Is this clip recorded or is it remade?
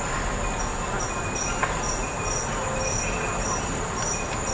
recorded